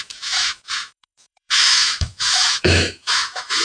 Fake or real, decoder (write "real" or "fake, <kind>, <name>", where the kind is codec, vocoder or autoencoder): fake, autoencoder, DAC-VAE